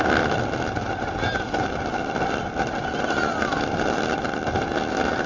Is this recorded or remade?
recorded